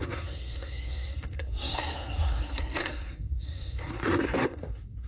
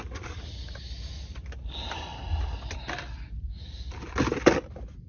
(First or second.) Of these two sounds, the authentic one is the second